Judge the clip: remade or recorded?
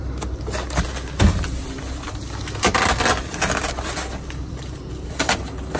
recorded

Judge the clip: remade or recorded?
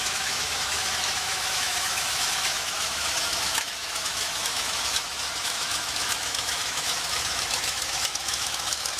remade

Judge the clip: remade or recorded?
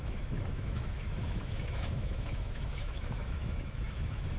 remade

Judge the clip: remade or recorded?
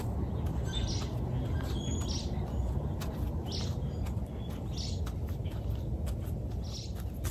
recorded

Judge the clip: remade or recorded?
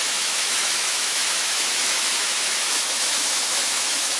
remade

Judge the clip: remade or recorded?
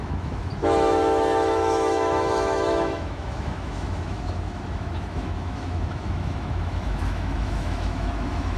remade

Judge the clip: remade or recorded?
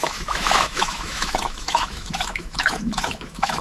remade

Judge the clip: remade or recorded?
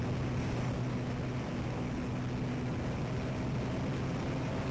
recorded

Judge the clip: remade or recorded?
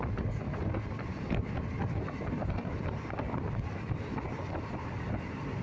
recorded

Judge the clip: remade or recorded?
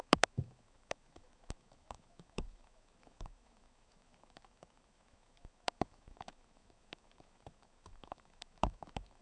remade